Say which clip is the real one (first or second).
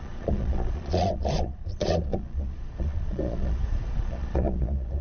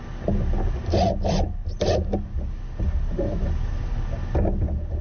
second